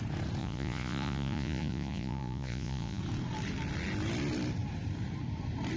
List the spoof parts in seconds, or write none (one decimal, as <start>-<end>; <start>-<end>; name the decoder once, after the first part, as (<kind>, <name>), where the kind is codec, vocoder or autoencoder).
0.4-3.0 (vocoder, Vocos)